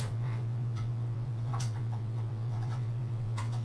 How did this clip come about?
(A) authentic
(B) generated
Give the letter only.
B